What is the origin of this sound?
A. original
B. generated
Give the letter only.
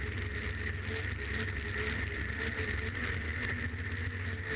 A